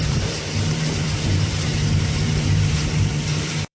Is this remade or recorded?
remade